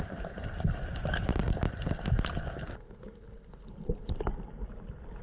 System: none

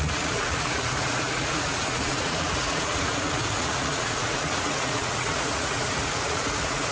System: vocoder, Vocos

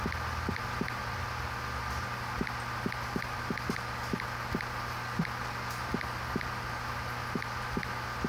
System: none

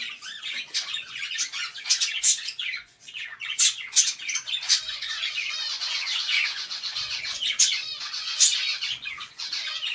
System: vocoder, Vocos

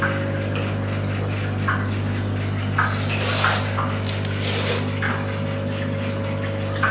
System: none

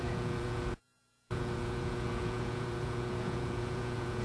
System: vocoder, Vocos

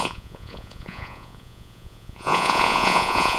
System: vocoder, Vocos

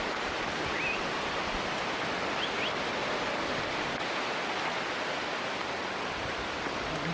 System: none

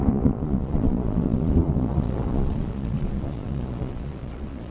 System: vocoder, Vocos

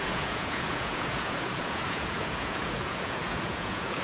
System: vocoder, Vocos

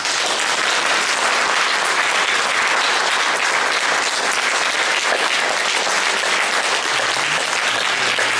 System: none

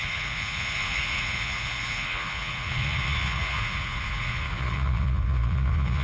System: vocoder, Vocos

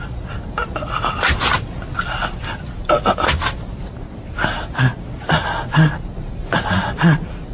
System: none